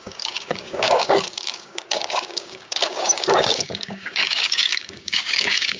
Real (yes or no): no